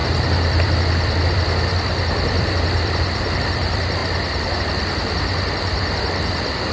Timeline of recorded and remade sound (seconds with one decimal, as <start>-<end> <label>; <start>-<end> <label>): 0.0-4.0 remade; 4.0-4.6 recorded; 4.6-6.7 remade